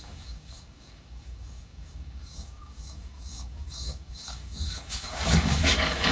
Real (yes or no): no